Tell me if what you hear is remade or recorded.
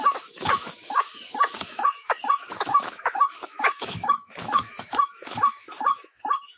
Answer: remade